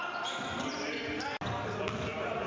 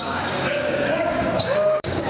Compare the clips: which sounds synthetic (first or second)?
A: second